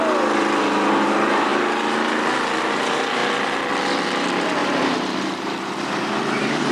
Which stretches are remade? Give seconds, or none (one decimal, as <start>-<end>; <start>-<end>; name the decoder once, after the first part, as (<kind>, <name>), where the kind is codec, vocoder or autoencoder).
4.6-6.7 (vocoder, BigVGAN v2)